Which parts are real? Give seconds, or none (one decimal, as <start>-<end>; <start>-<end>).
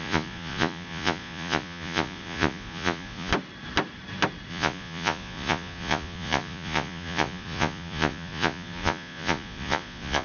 3.3-4.5